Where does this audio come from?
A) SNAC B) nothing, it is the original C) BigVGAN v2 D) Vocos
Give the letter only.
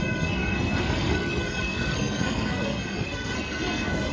A